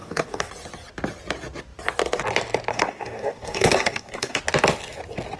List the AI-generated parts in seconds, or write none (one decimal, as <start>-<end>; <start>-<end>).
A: 0.0-0.5; 2.7-4.4